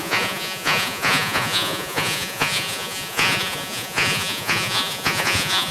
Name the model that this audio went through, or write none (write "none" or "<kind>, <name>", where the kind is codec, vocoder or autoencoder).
vocoder, Vocos